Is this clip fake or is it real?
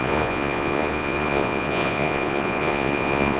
fake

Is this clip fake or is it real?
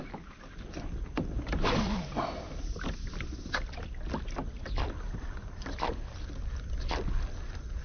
real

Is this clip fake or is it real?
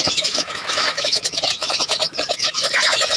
fake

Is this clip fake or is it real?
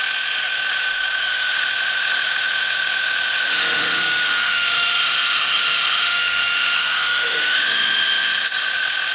fake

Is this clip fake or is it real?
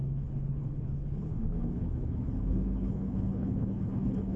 fake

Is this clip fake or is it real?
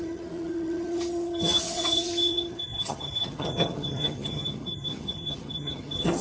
fake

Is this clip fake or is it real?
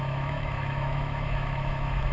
fake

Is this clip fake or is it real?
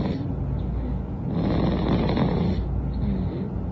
real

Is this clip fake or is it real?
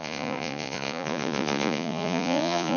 fake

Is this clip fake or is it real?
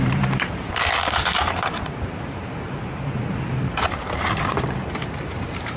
fake